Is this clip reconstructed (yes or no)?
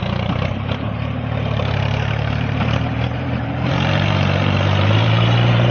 yes